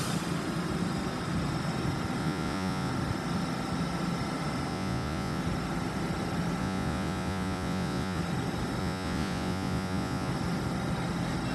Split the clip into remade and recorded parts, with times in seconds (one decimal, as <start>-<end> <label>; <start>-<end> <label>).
0.0-2.2 recorded; 2.2-2.9 remade; 2.9-4.7 recorded; 4.7-5.4 remade; 5.4-6.6 recorded; 6.6-8.2 remade; 8.2-8.8 recorded; 8.8-10.3 remade; 10.3-11.5 recorded